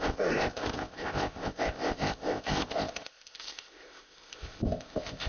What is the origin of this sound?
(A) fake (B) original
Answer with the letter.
A